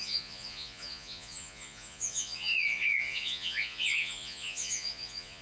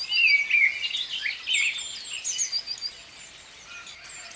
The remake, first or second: first